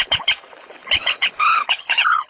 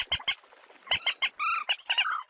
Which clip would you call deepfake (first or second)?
first